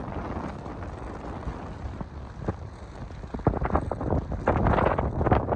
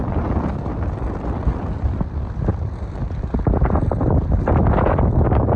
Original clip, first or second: first